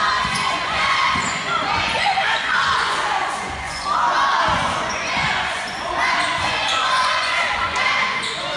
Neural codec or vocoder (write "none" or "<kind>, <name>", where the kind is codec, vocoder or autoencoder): vocoder, Vocos